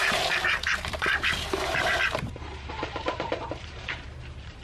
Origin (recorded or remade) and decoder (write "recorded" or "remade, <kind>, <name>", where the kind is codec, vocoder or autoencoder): remade, vocoder, BigVGAN v2